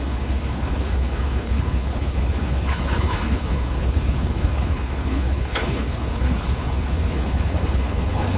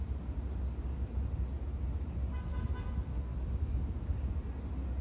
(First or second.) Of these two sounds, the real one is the second